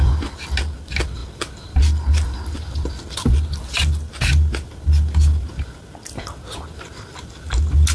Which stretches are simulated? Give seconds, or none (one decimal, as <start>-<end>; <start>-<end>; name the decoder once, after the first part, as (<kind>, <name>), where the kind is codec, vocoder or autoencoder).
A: none